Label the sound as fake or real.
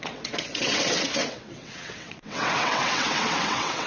fake